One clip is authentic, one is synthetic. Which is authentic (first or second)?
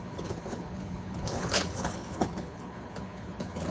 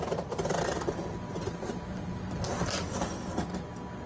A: second